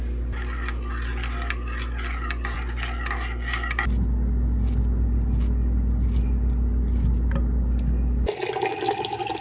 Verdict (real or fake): real